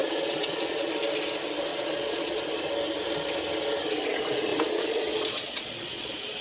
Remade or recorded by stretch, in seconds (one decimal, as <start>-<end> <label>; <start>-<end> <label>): 0.0-0.9 remade; 0.9-1.7 recorded; 1.7-2.5 remade; 2.5-4.5 recorded; 4.5-6.4 remade

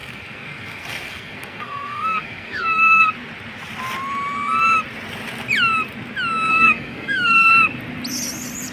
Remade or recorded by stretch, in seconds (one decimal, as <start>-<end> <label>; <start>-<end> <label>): 0.0-3.1 remade; 3.1-6.5 recorded; 6.5-7.5 remade; 7.5-8.7 recorded

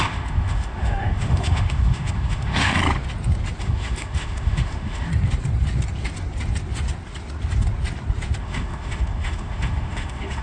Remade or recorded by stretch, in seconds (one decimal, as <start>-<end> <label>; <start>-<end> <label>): 0.0-2.8 remade; 2.8-3.6 recorded; 3.6-5.1 remade; 5.1-8.4 recorded; 8.4-10.4 remade

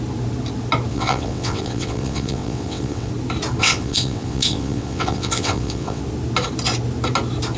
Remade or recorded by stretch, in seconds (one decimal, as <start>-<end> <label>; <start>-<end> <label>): 0.0-0.9 recorded; 0.9-3.1 remade; 3.1-3.6 recorded; 3.6-6.0 remade; 6.0-7.6 recorded

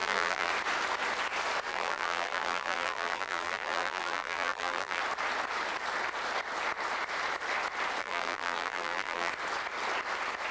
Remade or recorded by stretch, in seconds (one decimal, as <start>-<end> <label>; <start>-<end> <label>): 0.0-0.5 remade; 0.5-1.7 recorded; 1.7-5.0 remade; 5.0-8.0 recorded; 8.0-9.3 remade; 9.3-10.5 recorded